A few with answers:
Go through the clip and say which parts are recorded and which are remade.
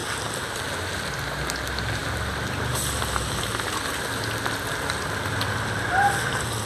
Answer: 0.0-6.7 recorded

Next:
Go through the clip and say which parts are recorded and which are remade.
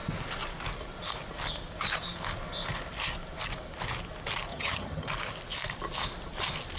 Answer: 0.0-4.5 recorded; 4.5-5.1 remade; 5.1-6.8 recorded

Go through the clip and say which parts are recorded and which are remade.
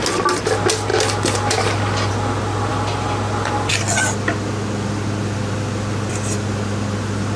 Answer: 0.0-7.4 recorded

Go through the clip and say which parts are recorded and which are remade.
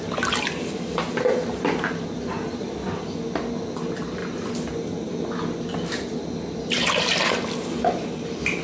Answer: 0.0-8.6 recorded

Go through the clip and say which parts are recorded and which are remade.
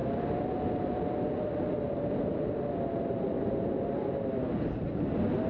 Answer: 0.0-5.5 recorded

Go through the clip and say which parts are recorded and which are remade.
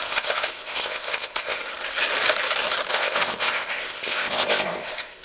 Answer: 0.0-1.6 remade; 1.6-2.9 recorded; 2.9-5.2 remade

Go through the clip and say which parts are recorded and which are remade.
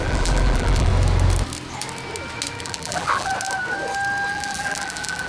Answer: 0.0-0.9 remade; 0.9-2.6 recorded; 2.6-3.3 remade; 3.3-4.3 recorded; 4.3-5.3 remade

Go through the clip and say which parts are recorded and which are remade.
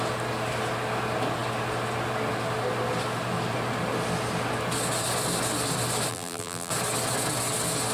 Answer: 0.0-6.1 recorded; 6.1-6.7 remade; 6.7-7.9 recorded